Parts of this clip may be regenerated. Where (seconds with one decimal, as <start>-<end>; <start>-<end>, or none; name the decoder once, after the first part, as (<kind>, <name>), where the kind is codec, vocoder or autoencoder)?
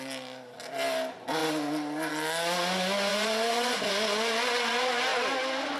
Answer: 3.1-3.9 (vocoder, BigVGAN v2)